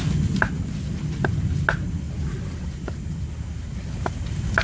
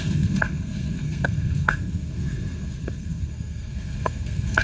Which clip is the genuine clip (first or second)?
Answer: first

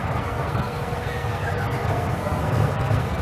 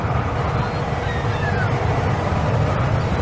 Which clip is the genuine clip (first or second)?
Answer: second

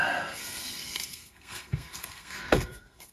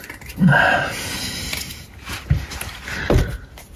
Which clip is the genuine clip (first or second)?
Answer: second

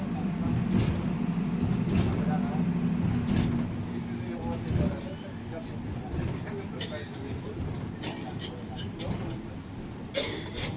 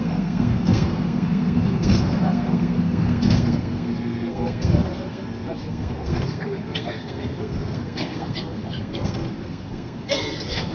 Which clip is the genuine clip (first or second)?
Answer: first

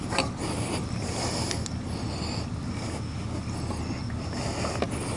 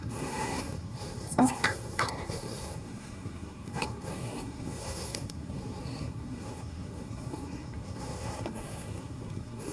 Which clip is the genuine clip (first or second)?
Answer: first